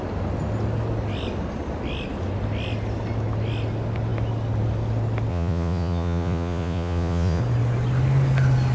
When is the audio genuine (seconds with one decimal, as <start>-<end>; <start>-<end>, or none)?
0.0-5.3; 7.4-8.7